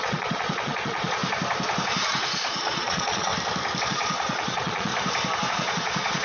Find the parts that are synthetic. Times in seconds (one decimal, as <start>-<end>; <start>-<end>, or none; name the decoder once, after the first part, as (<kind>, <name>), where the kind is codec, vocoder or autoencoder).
0.0-1.2 (vocoder, Vocos); 2.2-3.3; 3.8-4.9; 5.5-6.2